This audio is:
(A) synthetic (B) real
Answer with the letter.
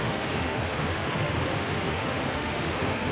A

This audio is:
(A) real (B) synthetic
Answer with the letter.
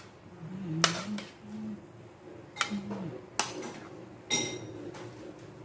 A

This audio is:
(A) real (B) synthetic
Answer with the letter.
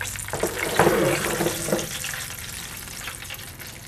A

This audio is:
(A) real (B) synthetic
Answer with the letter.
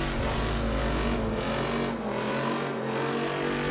A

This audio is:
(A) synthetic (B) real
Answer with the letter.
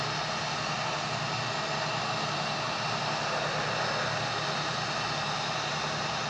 B